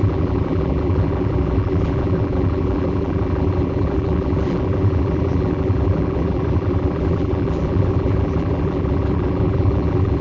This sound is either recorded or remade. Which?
remade